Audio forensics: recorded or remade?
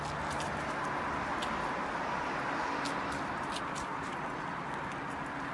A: recorded